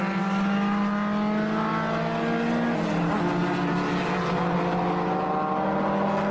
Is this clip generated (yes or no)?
no